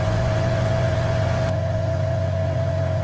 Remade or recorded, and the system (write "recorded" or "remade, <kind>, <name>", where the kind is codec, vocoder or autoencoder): remade, vocoder, Vocos